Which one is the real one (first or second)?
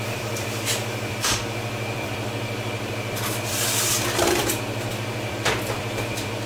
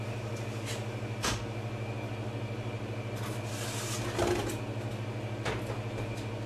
second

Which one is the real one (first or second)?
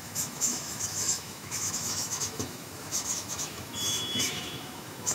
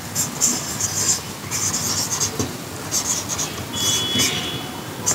second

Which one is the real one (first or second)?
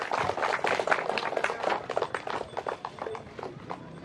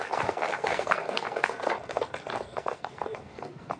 first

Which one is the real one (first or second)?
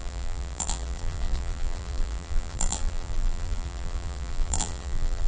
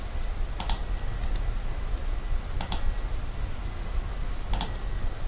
second